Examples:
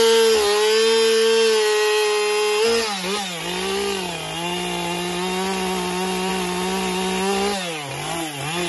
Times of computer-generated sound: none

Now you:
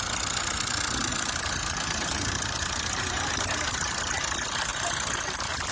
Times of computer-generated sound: 1.1-4.0; 4.7-5.7